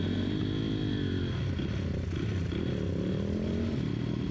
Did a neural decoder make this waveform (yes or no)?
no